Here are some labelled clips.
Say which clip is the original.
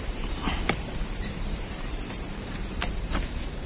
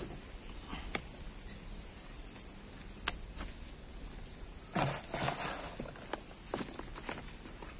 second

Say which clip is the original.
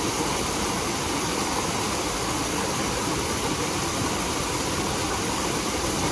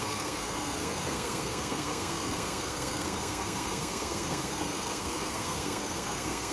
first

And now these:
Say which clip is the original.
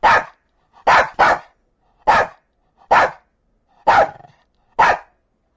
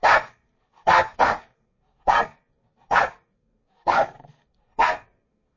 first